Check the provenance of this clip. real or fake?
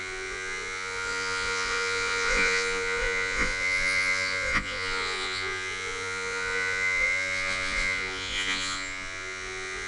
fake